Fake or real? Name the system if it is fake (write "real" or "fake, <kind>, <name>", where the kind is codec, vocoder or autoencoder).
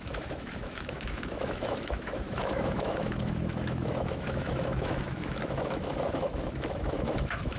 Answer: fake, autoencoder, DAC-VAE